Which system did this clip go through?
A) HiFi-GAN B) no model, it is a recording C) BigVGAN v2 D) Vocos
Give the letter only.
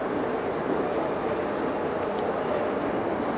B